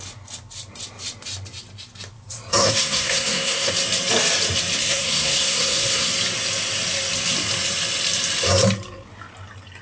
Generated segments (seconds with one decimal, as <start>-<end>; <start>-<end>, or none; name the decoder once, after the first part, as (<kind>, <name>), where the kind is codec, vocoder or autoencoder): 2.6-3.7 (codec, SNAC); 4.8-6.1